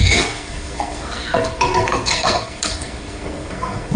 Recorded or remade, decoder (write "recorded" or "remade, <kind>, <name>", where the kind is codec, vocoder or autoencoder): remade, codec, SNAC